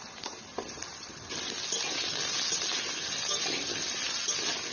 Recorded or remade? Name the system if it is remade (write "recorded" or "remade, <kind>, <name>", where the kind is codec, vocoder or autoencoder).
recorded